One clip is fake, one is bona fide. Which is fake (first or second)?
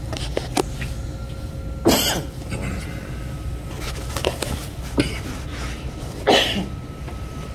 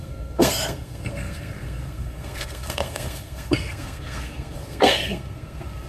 second